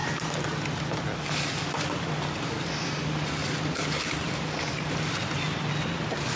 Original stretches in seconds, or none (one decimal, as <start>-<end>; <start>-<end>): 0.0-6.4